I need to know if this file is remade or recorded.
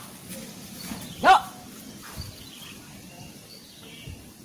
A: recorded